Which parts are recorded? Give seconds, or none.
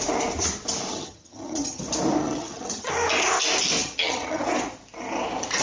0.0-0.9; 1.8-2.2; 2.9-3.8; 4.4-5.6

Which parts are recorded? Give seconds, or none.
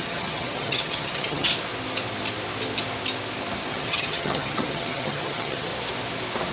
1.5-3.7; 5.7-6.5